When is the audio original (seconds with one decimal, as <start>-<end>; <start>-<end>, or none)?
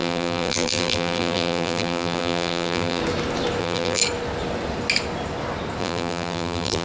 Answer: 3.0-3.6; 4.0-5.8